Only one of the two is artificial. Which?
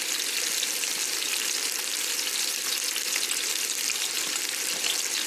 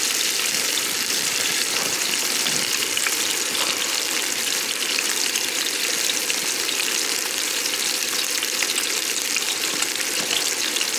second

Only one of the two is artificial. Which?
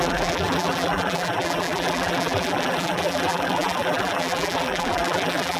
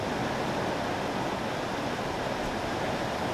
first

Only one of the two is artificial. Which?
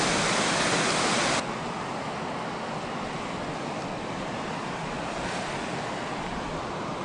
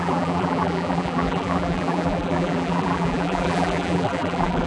second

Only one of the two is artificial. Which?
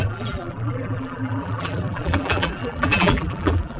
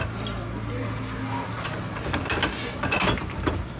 first